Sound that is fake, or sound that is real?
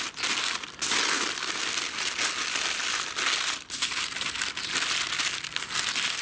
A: real